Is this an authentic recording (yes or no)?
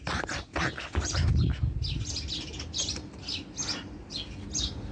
yes